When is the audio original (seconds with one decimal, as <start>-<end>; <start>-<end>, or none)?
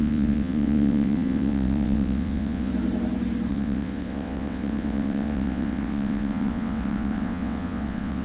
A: 2.7-3.5